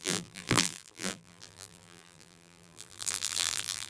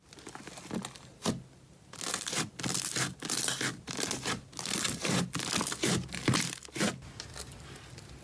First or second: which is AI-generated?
first